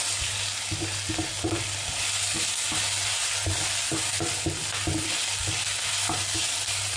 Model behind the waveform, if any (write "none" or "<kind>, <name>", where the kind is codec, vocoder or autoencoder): none